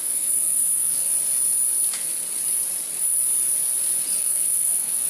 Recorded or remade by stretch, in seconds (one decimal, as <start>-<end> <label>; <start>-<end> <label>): 0.0-1.1 remade; 1.1-4.2 recorded; 4.2-5.1 remade